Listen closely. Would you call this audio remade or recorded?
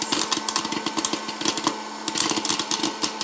recorded